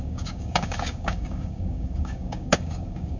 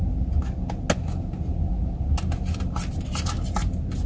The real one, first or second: second